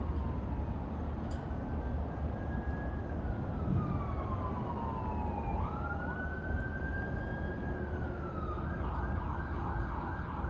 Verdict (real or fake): real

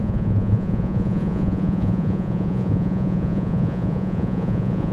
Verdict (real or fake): fake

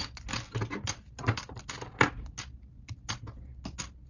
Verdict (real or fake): real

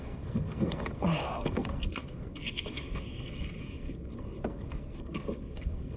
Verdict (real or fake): fake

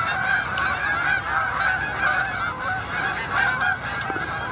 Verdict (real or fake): real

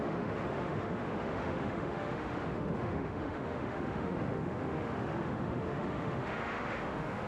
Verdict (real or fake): fake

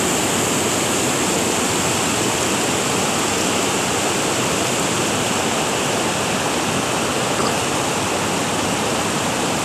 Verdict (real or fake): real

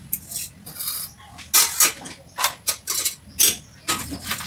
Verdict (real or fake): real